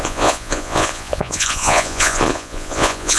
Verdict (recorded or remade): remade